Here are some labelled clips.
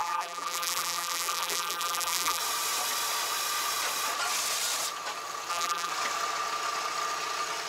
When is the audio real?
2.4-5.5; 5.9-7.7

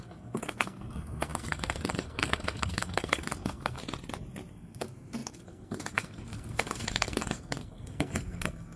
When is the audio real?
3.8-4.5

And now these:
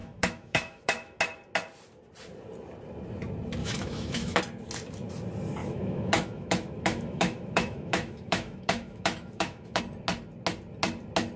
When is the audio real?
1.2-3.6; 4.4-5.6; 9.8-11.4

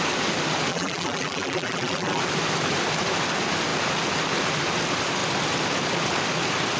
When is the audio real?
0.0-0.7; 2.2-6.8

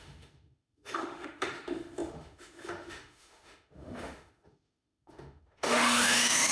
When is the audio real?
none